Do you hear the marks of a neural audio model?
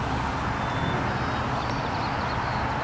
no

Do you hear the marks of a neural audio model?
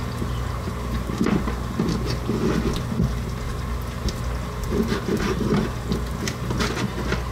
no